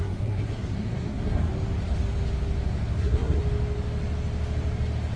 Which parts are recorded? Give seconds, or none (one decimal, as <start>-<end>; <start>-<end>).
1.5-3.0; 3.4-5.2